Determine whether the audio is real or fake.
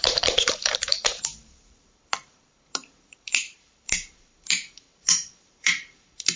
fake